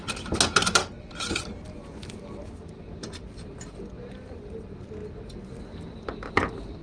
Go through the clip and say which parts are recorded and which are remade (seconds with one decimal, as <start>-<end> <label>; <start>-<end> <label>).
0.0-0.8 recorded; 0.8-1.4 remade; 1.4-6.8 recorded